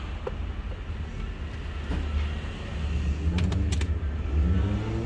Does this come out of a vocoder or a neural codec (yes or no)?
no